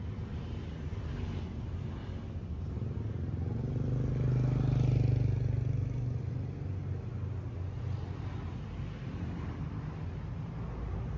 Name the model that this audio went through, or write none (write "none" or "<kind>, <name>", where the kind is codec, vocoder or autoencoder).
none